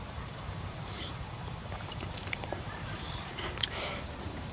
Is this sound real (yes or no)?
no